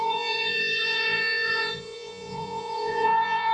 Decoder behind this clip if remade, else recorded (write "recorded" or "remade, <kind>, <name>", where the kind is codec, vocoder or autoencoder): remade, vocoder, Vocos